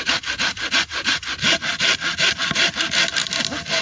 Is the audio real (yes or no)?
yes